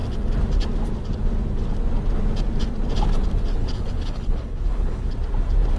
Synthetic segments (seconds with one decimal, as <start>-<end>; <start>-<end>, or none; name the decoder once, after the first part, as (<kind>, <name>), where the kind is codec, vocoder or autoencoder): 3.6-5.1 (codec, HILCodec)